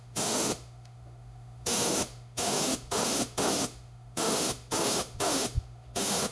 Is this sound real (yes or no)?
no